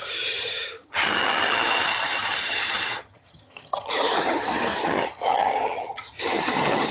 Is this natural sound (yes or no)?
no